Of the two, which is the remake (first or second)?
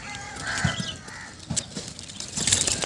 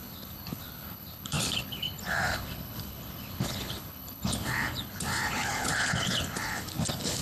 second